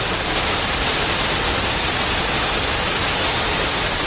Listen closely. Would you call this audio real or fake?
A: real